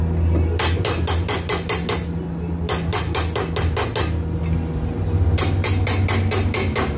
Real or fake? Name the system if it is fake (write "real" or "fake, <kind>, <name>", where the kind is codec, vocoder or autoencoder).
real